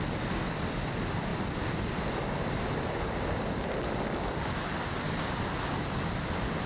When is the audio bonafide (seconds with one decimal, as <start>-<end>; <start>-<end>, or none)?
0.0-6.7

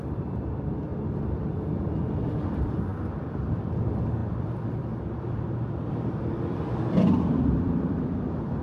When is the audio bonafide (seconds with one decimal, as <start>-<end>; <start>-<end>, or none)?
0.9-2.1

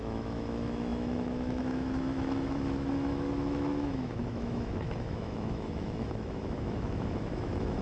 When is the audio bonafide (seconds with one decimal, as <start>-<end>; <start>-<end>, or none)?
none

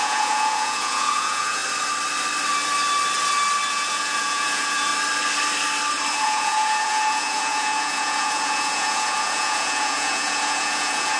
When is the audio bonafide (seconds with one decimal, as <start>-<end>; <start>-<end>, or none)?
1.6-3.7; 4.9-6.1

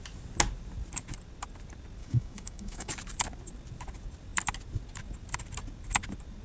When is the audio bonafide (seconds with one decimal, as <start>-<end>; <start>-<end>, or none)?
0.0-2.0; 2.9-6.4

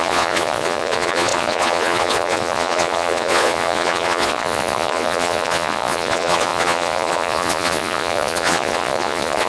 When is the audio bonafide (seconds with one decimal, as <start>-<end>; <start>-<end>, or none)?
none